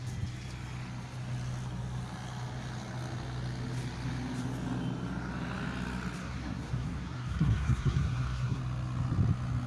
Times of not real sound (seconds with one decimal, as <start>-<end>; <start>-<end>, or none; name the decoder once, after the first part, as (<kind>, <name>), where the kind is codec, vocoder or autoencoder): 6.2-8.6 (codec, SNAC)